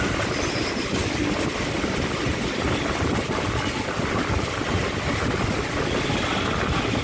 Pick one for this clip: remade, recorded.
recorded